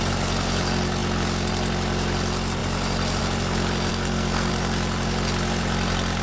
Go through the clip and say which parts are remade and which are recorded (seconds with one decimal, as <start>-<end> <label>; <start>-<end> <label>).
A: 0.0-3.9 recorded; 3.9-4.5 remade; 4.5-6.2 recorded